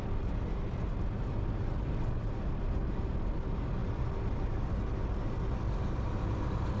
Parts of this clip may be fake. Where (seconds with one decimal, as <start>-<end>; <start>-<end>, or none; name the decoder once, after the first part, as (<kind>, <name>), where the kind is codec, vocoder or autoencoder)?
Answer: none

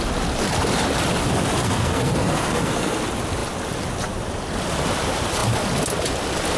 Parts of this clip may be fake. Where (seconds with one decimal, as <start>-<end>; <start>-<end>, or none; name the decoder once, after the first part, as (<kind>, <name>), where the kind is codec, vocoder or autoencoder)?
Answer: 1.6-3.0 (codec, SNAC)

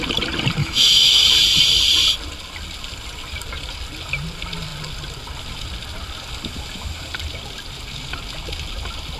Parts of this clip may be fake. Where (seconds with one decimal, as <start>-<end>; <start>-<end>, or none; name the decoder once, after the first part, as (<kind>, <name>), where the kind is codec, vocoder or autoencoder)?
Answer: 0.6-1.3 (autoencoder, DAC-VAE)

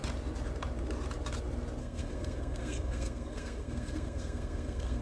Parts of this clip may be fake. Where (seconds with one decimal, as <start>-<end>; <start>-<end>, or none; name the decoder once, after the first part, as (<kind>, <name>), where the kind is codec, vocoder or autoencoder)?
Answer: 1.8-5.0 (codec, SNAC)

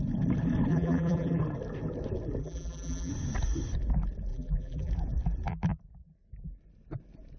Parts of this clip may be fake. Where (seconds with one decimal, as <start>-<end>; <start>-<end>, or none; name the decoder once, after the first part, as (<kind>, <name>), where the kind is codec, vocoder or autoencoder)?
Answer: 0.7-1.4 (vocoder, BigVGAN v2); 2.4-3.1; 4.3-4.9

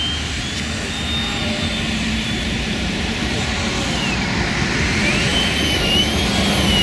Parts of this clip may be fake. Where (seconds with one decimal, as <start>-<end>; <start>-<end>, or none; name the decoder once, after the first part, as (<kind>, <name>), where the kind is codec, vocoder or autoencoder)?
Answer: 1.4-3.2 (vocoder, BigVGAN v2); 5.3-6.0

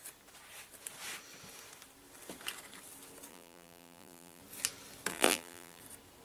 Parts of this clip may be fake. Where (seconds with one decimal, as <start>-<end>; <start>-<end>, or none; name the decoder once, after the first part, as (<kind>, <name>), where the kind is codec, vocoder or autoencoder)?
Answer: 3.3-4.4 (vocoder, BigVGAN v2); 5.1-5.8